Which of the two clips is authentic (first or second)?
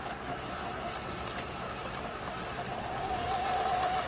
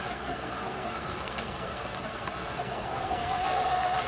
first